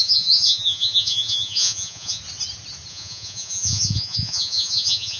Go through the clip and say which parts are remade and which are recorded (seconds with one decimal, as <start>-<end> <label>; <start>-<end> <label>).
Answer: 0.0-2.2 remade; 2.2-2.9 recorded; 2.9-5.2 remade